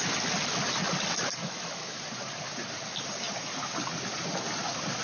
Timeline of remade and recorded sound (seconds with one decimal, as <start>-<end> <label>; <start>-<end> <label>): 0.0-1.4 recorded; 1.4-2.0 remade; 2.0-5.0 recorded